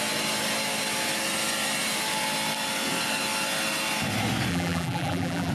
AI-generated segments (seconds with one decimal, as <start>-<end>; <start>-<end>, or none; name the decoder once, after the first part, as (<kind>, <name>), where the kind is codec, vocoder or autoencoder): 4.5-5.5 (vocoder, BigVGAN v2)